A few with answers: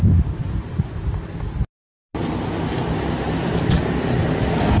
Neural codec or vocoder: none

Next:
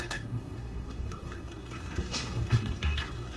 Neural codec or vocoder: codec, SNAC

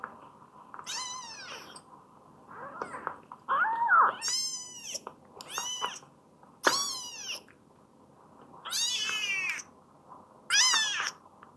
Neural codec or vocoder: none